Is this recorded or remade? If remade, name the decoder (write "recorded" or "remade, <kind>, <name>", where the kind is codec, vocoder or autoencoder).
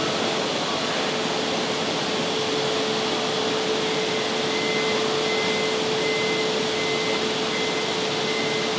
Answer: recorded